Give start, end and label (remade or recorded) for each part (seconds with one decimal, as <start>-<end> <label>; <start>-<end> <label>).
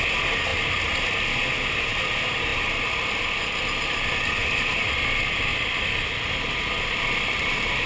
0.0-7.9 recorded